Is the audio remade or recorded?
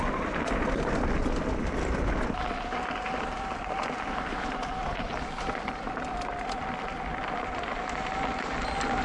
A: recorded